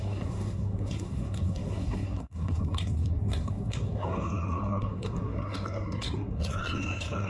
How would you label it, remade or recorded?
remade